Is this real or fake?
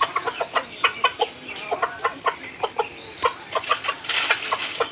real